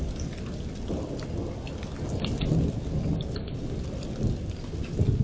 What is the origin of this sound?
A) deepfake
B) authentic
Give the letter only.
B